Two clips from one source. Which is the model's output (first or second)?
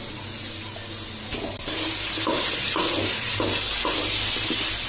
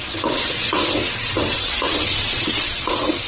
second